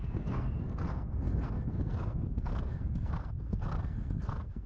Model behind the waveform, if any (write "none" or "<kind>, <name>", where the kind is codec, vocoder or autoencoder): codec, SNAC